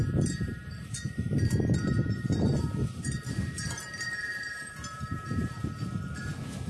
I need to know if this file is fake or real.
fake